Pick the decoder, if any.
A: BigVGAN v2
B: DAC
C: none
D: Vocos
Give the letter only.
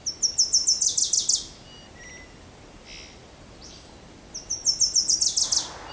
C